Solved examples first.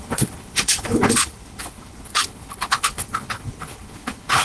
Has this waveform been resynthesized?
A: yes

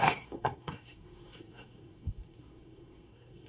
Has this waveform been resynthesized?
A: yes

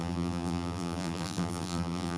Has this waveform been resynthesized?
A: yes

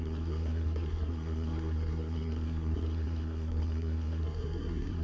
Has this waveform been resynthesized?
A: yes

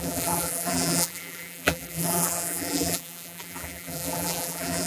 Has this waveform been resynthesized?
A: yes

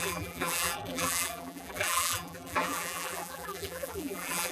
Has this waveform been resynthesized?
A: yes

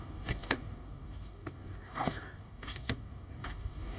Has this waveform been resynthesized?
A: yes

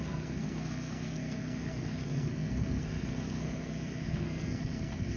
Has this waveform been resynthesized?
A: yes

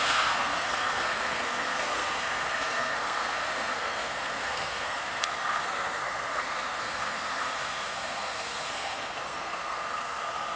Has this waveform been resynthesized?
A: yes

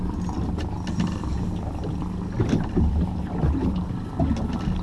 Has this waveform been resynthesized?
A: no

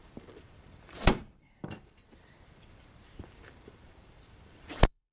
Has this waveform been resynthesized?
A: yes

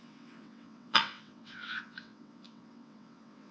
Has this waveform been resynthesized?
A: yes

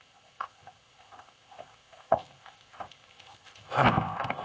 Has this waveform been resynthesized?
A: yes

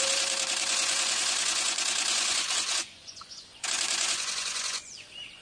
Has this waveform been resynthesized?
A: yes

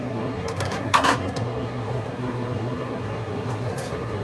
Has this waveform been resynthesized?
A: yes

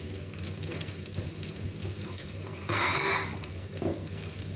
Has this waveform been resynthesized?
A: yes